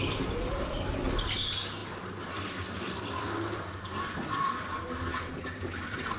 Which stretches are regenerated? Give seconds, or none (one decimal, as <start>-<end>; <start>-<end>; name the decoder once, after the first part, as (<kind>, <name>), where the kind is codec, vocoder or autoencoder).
none